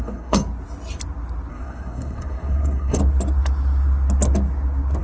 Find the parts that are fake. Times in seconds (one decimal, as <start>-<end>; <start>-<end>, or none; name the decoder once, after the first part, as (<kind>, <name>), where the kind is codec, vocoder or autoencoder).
0.0-0.4 (codec, SNAC); 1.5-3.0